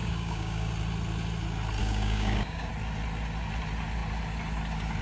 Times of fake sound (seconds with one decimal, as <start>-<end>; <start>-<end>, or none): 0.0-0.7; 1.8-2.7